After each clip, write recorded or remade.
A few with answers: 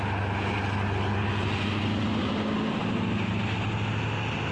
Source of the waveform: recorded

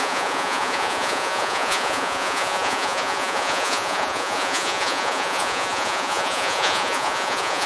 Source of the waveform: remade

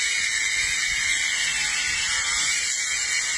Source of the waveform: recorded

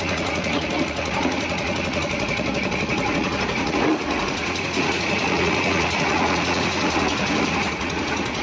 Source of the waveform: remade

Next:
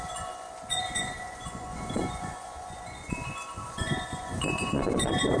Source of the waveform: remade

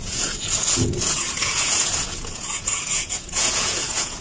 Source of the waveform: remade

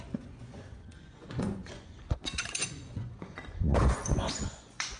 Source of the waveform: remade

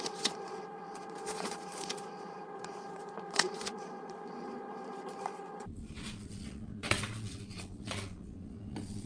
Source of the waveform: remade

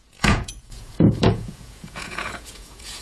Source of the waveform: remade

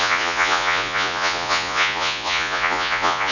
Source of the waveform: remade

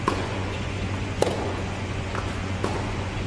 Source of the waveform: remade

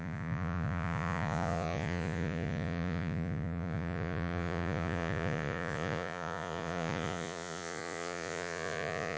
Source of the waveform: remade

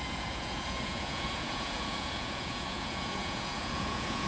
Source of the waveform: remade